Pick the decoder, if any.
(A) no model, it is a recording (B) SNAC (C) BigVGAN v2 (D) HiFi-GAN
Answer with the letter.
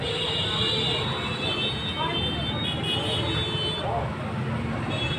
A